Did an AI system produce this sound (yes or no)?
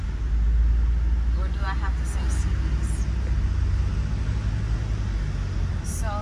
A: no